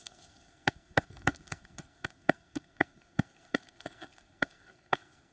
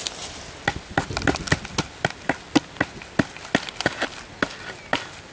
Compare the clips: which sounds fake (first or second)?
first